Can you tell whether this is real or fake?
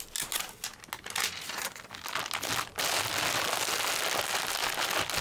real